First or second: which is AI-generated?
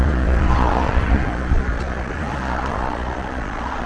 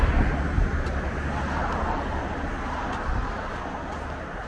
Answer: first